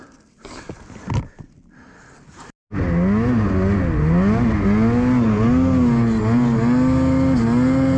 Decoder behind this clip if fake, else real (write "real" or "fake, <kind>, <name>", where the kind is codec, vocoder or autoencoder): real